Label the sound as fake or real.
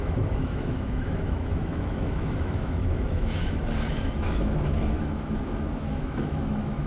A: fake